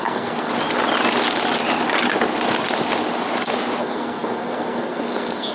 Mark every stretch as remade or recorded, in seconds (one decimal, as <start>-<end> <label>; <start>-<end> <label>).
0.0-0.5 remade; 0.5-3.8 recorded; 3.8-5.5 remade